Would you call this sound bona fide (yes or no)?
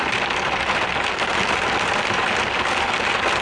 yes